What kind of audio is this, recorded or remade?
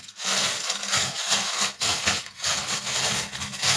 remade